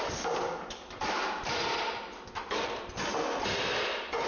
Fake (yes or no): no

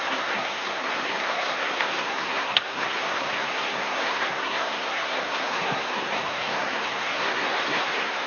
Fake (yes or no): yes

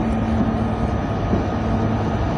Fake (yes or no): no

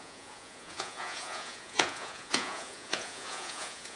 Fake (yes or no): yes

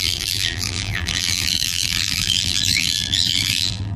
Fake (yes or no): yes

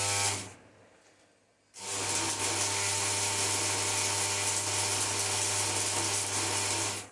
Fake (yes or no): no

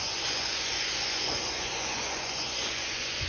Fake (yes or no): yes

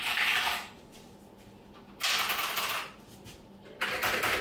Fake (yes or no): no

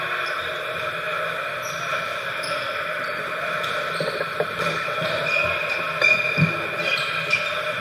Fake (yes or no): no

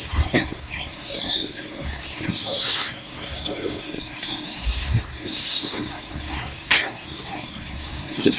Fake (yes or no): yes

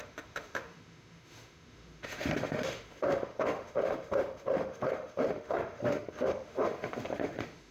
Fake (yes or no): yes